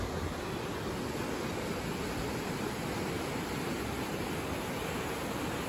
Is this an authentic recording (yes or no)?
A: yes